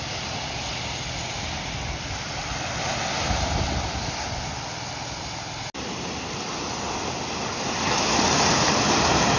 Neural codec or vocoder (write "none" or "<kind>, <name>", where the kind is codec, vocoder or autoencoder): none